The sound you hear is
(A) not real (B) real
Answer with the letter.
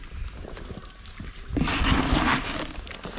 B